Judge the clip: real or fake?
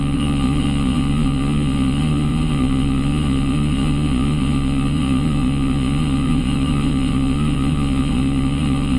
fake